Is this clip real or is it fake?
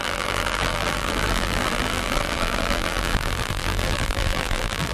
fake